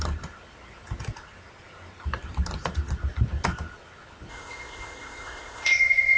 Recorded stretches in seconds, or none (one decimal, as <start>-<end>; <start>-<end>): 0.0-4.3